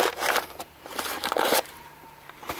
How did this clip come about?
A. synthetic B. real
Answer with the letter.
A